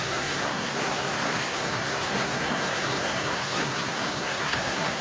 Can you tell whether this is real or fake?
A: fake